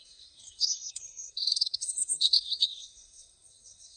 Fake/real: fake